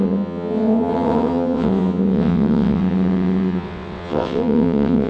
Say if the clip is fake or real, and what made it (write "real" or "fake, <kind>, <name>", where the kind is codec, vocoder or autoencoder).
fake, vocoder, WaveNeXt